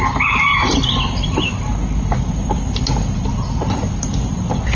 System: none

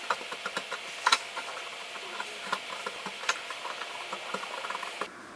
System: none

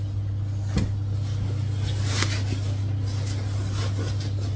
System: none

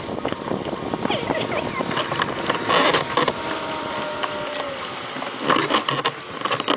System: none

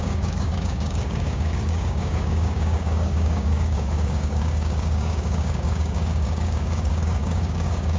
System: codec, DAC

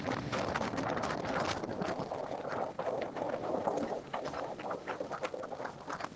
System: none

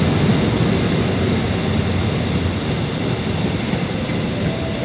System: none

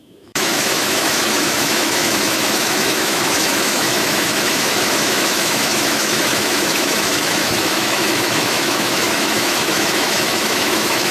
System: autoencoder, DAC-VAE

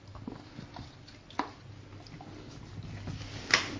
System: none